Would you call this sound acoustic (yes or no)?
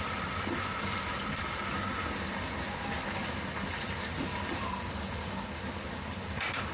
yes